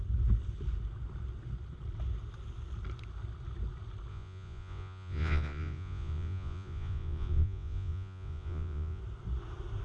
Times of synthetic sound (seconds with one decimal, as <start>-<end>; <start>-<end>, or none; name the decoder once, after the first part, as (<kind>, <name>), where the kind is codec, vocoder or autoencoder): 4.1-9.0 (vocoder, Vocos)